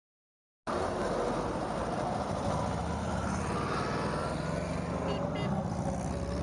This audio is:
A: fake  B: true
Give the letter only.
B